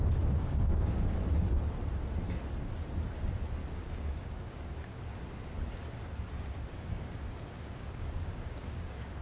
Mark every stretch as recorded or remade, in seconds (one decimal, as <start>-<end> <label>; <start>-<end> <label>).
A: 0.0-0.4 recorded; 0.4-1.3 remade; 1.3-3.6 recorded; 3.6-5.1 remade; 5.1-6.0 recorded; 6.0-9.2 remade